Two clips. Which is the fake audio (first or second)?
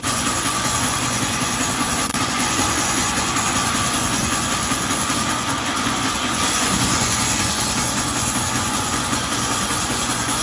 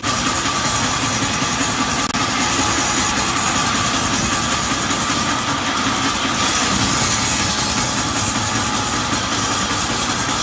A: first